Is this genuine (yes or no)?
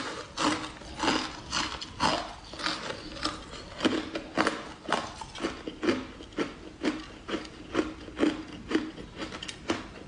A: yes